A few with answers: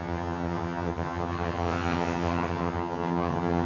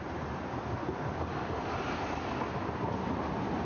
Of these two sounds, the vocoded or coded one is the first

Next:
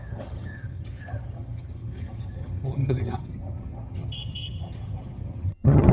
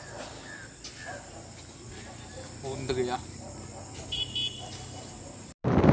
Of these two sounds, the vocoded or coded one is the first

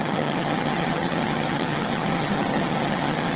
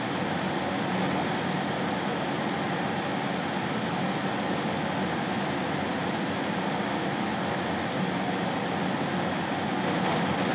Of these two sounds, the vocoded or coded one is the first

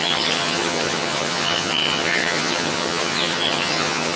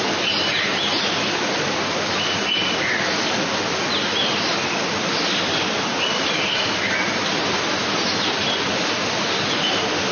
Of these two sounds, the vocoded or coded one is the first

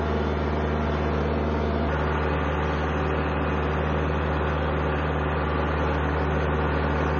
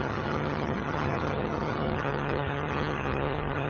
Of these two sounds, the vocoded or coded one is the second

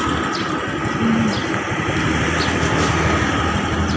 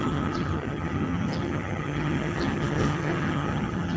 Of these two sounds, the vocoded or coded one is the second